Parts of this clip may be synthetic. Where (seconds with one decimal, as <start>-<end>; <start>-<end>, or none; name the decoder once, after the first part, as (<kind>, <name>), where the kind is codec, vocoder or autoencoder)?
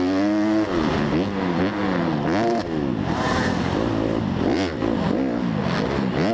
none